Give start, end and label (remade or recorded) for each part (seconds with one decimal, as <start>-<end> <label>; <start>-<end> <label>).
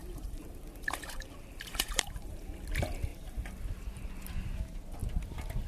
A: 0.0-2.4 remade; 2.4-3.1 recorded; 3.1-4.1 remade; 4.1-5.7 recorded